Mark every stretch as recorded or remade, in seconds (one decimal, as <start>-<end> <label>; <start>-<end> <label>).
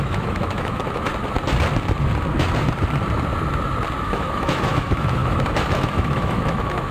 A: 0.0-1.1 remade; 1.1-4.0 recorded; 4.0-6.9 remade